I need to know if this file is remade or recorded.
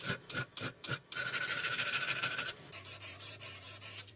remade